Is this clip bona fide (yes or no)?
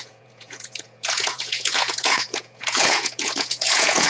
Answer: no